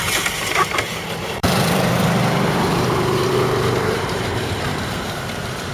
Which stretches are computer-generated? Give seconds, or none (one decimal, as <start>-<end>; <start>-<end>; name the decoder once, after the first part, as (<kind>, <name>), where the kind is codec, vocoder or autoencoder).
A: 0.0-5.7 (vocoder, BigVGAN v2)